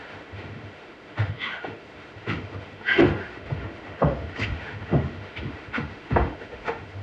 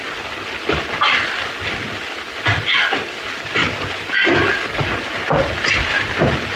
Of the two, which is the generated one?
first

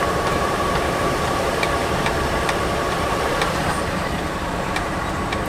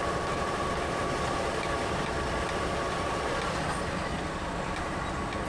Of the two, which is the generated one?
first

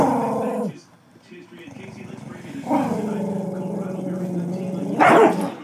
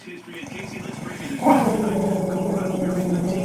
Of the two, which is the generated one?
second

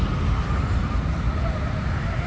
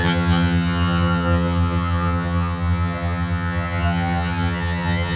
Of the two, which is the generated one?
second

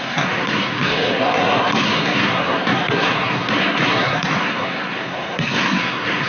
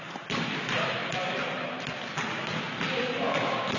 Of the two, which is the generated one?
first